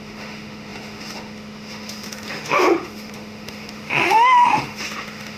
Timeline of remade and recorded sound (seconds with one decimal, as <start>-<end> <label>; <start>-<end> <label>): 0.0-5.4 remade